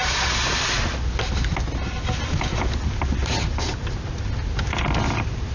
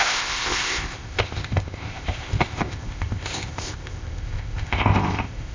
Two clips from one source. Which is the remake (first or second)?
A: second